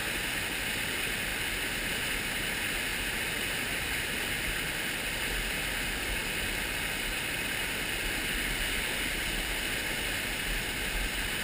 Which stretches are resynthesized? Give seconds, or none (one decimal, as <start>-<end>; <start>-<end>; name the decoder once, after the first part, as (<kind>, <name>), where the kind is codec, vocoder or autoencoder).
none